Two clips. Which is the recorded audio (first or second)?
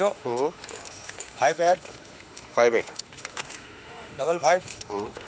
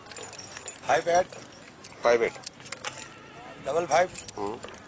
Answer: second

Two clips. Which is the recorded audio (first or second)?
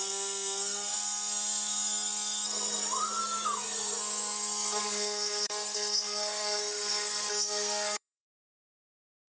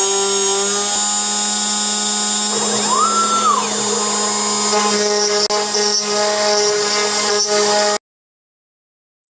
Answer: second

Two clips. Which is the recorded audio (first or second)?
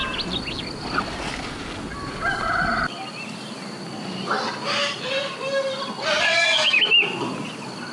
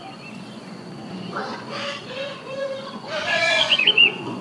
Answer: first